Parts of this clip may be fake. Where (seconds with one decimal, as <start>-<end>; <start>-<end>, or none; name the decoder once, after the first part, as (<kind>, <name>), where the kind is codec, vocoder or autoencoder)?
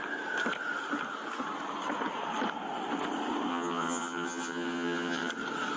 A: 3.5-5.3 (vocoder, HiFi-GAN)